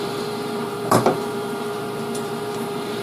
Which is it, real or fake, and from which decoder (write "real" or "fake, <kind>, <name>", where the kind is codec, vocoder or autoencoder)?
fake, vocoder, BigVGAN v2